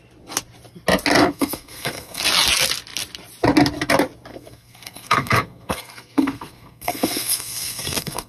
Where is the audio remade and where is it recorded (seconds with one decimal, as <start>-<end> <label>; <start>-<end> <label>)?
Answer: 0.0-1.2 recorded; 1.2-2.2 remade; 2.2-4.3 recorded; 4.3-8.3 remade